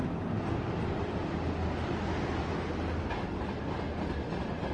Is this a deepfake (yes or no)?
no